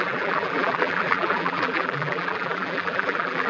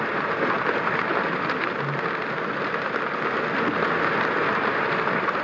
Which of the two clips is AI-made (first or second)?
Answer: first